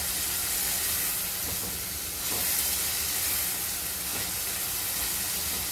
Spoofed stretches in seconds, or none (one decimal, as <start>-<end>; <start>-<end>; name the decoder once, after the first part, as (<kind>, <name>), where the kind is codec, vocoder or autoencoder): none